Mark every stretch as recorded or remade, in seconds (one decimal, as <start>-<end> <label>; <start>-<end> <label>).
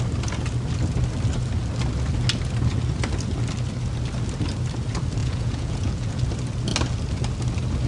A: 0.0-5.2 recorded; 5.2-6.2 remade; 6.2-7.9 recorded